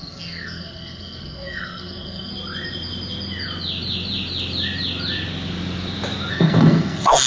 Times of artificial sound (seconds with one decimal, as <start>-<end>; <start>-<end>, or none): 0.0-2.3; 6.3-7.3